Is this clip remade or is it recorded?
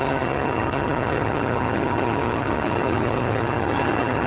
remade